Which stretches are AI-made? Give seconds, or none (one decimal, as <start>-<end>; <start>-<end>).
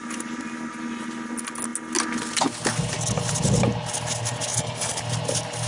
4.5-5.0